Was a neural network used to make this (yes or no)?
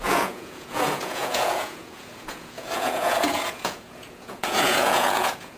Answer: yes